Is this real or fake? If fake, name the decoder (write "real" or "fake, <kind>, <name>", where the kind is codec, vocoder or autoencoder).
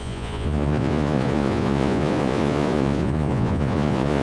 fake, vocoder, Vocos